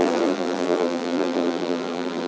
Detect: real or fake fake